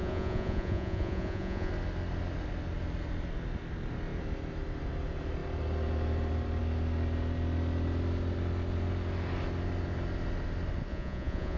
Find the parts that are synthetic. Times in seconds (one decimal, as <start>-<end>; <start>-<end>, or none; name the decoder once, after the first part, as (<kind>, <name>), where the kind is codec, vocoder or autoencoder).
0.0-1.7 (vocoder, Vocos); 10.9-11.6